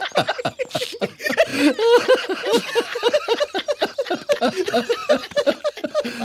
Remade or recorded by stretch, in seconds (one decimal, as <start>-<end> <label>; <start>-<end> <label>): 0.0-2.9 recorded; 2.9-3.5 remade; 3.5-5.0 recorded; 5.0-5.7 remade; 5.7-6.2 recorded